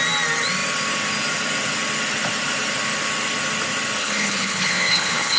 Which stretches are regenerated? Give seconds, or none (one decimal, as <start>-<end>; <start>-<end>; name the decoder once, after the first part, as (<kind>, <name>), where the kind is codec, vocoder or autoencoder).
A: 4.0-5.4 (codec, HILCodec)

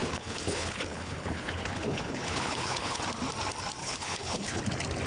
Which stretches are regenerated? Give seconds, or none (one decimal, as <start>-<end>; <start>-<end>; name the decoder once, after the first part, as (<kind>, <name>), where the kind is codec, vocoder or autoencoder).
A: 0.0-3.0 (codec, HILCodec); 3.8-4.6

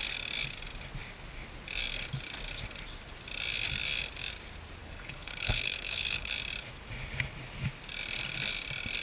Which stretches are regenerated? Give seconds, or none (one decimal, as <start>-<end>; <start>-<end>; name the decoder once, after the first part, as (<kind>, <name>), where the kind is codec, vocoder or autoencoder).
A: 4.8-6.3 (codec, HILCodec)

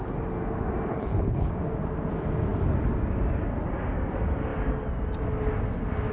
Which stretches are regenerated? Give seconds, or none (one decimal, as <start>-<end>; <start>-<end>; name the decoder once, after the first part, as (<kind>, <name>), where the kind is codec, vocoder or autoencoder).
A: 0.9-1.5 (codec, HILCodec)